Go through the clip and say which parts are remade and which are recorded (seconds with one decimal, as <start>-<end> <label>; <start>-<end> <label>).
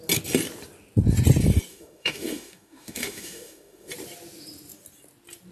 0.0-1.7 recorded; 1.7-3.9 remade; 3.9-5.5 recorded